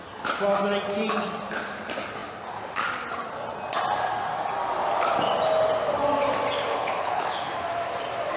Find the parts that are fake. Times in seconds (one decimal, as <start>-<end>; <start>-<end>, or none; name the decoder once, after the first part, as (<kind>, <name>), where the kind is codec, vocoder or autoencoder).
6.7-7.5 (codec, HILCodec)